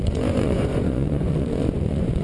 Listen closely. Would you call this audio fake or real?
fake